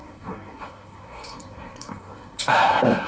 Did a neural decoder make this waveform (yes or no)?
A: yes